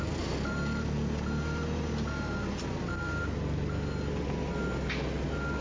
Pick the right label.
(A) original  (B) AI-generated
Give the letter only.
A